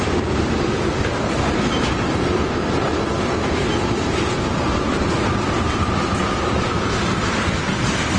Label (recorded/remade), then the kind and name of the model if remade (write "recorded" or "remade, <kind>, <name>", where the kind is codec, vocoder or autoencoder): recorded